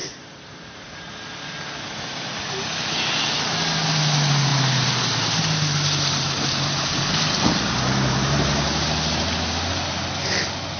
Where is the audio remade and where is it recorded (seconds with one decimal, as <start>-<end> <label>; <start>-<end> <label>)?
0.0-1.1 remade; 1.1-10.8 recorded